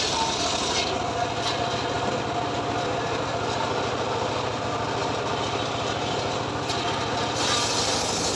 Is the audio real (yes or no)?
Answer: yes